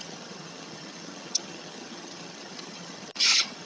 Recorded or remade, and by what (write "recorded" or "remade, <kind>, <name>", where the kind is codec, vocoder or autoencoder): remade, vocoder, HiFi-GAN